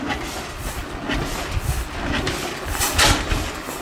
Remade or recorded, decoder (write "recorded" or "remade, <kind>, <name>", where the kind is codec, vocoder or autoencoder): recorded